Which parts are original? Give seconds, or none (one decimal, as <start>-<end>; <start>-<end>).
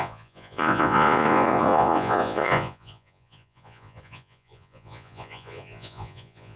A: none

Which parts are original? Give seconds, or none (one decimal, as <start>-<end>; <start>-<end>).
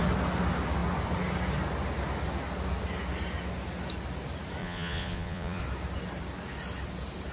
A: 0.0-4.6; 5.6-7.3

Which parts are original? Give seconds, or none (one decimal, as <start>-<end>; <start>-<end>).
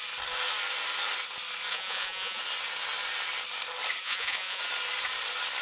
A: 0.0-1.7; 2.4-4.0; 4.6-5.6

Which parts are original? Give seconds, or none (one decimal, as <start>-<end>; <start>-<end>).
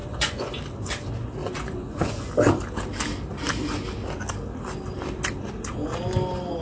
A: 0.6-1.4; 2.3-6.6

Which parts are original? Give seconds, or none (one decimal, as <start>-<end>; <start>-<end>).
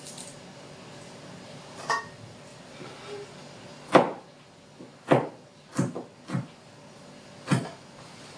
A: 0.0-8.4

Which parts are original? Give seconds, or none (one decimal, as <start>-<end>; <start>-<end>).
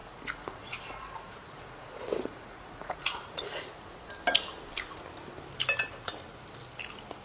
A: 4.1-7.2